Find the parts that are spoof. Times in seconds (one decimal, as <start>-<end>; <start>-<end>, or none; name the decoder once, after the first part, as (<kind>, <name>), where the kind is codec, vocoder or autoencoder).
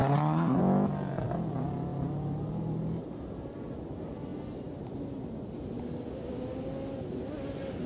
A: 0.0-0.6 (codec, SNAC)